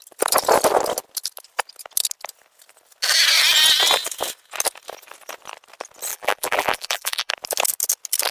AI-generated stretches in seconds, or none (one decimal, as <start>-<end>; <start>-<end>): 6.1-7.3